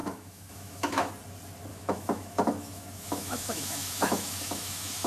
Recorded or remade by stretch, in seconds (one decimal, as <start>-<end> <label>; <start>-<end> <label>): 0.0-1.1 remade; 1.1-1.7 recorded; 1.7-5.1 remade